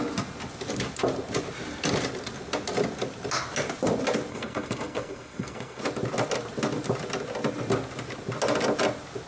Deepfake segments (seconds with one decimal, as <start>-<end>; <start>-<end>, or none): 4.3-5.8